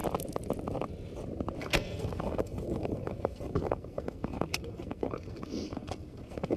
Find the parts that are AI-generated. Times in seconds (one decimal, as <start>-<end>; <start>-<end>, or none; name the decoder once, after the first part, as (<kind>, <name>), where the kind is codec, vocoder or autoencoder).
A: 1.6-6.6 (codec, SNAC)